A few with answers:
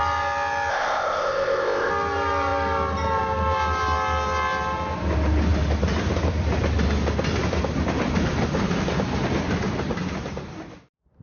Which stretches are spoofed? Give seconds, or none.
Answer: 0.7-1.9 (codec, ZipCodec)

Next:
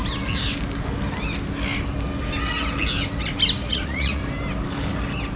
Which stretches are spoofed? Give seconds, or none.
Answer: 3.6-4.2 (vocoder, Vocos)

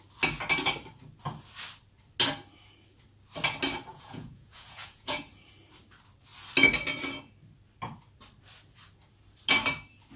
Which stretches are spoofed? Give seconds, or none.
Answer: 3.9-5.3 (vocoder, Vocos)

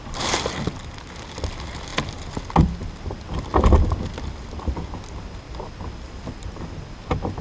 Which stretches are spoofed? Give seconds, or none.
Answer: none

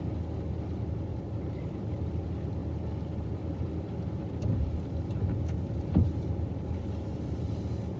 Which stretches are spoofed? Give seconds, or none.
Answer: 1.1-1.7 (vocoder, BigVGAN v2)

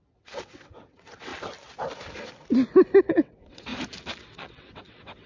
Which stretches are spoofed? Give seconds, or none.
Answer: 0.0-1.3 (vocoder, WaveNeXt); 3.0-3.7; 4.2-5.3